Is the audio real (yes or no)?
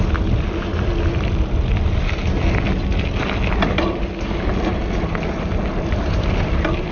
yes